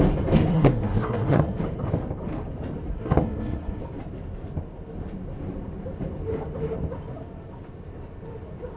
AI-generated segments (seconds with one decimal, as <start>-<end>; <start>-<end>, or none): 0.5-1.6; 2.9-3.8